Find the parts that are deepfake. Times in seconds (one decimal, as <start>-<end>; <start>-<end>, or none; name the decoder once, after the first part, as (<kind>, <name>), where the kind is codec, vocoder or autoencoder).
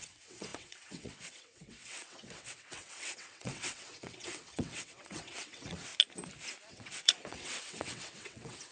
0.0-5.9 (vocoder, WaveNeXt); 6.7-8.7